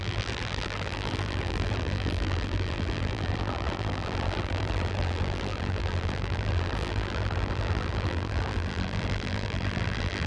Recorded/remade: remade